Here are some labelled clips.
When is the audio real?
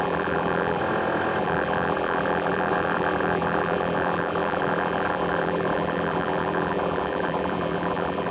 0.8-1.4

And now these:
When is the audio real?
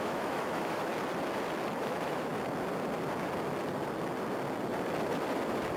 0.9-1.8; 2.3-5.8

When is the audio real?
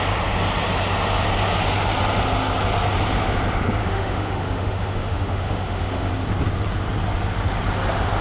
0.0-3.8; 6.1-8.2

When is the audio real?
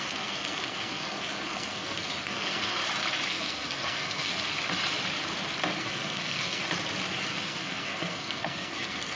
2.8-3.3; 4.3-5.8; 6.6-7.2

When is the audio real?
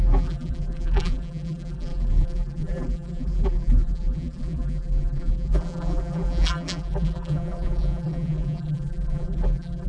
none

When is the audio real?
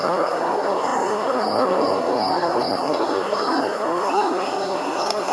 none